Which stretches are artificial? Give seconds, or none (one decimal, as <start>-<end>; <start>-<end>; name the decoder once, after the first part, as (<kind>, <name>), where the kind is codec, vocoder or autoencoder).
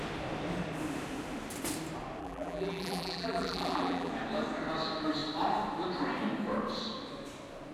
2.2-4.1 (vocoder, BigVGAN v2)